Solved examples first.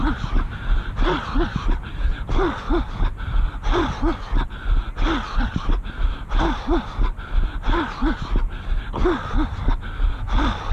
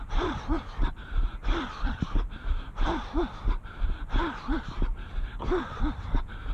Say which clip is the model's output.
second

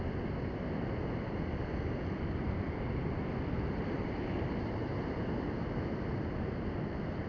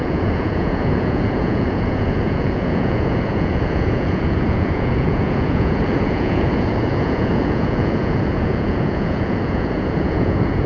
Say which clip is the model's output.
second